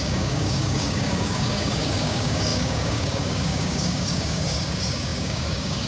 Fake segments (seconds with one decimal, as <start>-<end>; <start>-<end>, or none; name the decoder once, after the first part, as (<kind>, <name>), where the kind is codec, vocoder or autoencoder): 0.0-5.9 (codec, DAC)